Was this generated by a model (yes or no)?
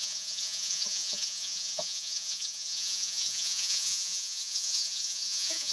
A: yes